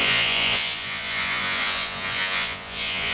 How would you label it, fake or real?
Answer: fake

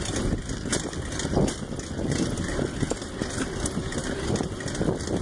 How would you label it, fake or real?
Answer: real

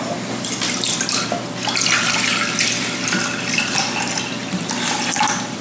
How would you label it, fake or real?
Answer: real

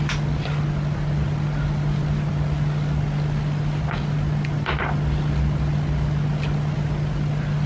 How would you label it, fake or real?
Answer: real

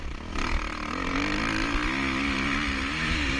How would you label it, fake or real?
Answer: real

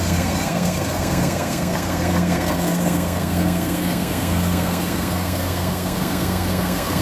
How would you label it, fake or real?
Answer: fake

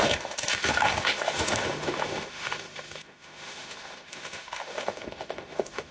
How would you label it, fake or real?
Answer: fake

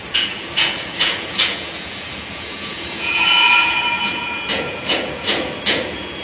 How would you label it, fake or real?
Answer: fake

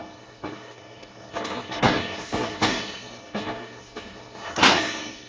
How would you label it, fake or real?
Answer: fake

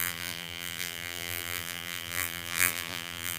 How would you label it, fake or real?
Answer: fake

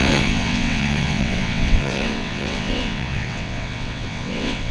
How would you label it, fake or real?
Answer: fake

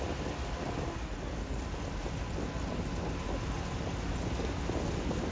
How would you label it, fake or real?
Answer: real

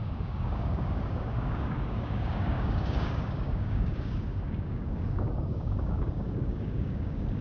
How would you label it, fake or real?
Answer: fake